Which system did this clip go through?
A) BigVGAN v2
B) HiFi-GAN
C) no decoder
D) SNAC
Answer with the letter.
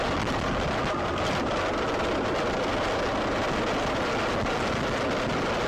C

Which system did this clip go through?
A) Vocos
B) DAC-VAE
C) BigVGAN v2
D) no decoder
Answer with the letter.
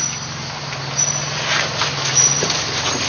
D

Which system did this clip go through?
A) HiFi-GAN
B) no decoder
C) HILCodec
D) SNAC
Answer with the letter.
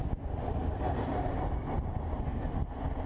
B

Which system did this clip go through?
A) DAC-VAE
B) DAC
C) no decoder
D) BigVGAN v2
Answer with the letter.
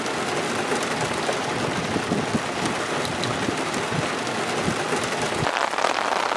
C